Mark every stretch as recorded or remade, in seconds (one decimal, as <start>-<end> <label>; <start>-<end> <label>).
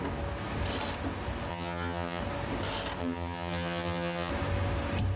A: 0.0-1.5 recorded; 1.5-2.2 remade; 2.2-3.0 recorded; 3.0-4.3 remade; 4.3-5.2 recorded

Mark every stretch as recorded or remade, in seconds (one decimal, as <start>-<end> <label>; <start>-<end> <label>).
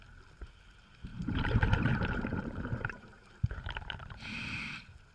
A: 0.0-1.1 recorded; 1.1-4.2 remade; 4.2-5.1 recorded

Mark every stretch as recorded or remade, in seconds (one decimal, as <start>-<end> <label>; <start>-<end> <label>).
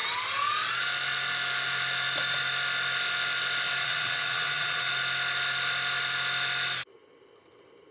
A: 0.0-3.8 recorded; 3.8-4.9 remade; 4.9-7.9 recorded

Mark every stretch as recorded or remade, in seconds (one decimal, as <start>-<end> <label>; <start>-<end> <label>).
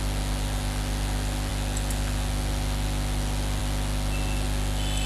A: 0.0-5.1 recorded